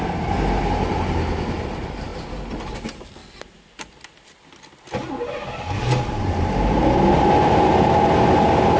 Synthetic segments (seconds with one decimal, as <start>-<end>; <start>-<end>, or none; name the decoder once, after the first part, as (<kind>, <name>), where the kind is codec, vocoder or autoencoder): none